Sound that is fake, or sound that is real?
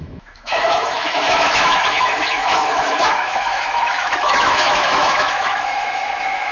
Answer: fake